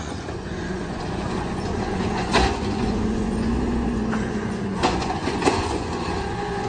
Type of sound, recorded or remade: remade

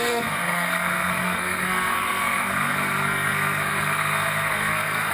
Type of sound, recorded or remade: remade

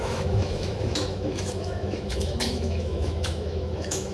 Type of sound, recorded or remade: remade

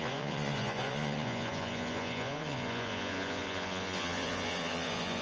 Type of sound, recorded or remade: remade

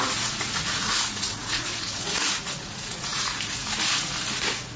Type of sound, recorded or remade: remade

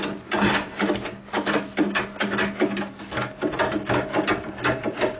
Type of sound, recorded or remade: recorded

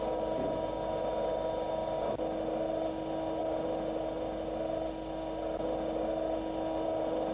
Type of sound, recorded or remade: recorded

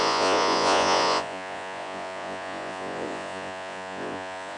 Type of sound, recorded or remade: remade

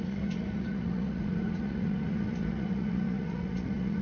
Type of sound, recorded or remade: remade